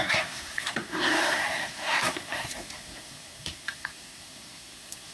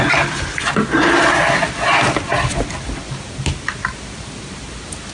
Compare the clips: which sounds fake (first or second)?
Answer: first